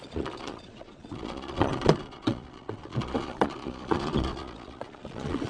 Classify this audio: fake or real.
fake